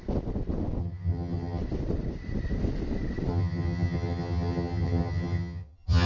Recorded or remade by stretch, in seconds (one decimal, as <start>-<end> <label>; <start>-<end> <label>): 0.0-0.8 recorded; 0.8-1.6 remade; 1.6-3.3 recorded; 3.3-6.1 remade